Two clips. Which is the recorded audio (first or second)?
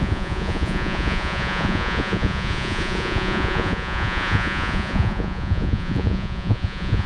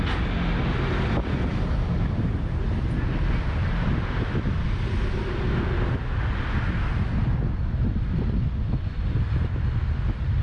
second